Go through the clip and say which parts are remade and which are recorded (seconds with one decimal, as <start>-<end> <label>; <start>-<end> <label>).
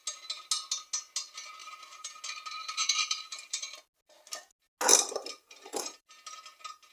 0.0-1.6 recorded; 1.6-2.2 remade; 2.2-2.6 recorded; 2.6-3.6 remade; 3.6-4.9 recorded; 4.9-6.1 remade; 6.1-6.9 recorded